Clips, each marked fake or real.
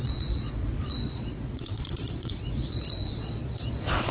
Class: fake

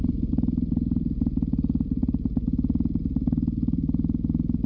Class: real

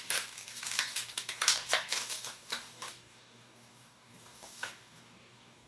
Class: fake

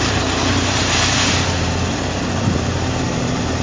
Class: fake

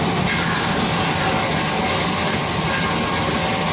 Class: real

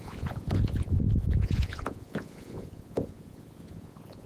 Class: fake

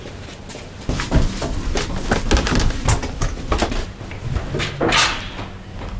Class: real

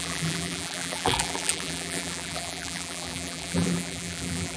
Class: fake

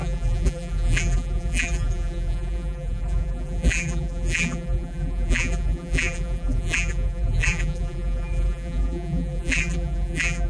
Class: fake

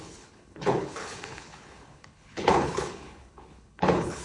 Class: fake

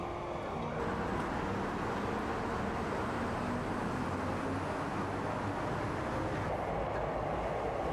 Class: real